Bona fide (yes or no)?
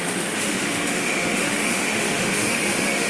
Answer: no